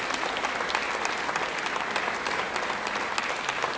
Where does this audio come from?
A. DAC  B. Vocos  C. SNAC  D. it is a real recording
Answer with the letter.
D